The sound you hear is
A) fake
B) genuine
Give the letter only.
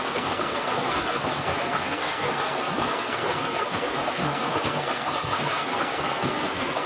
A